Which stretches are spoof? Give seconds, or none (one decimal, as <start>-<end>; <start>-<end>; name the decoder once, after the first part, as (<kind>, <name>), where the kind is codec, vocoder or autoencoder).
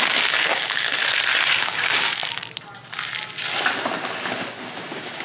0.0-1.0 (codec, DAC); 1.6-2.2; 4.5-5.2